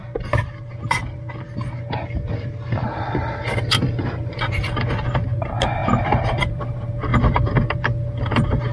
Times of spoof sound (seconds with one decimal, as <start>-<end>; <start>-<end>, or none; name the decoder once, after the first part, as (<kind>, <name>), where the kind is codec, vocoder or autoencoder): none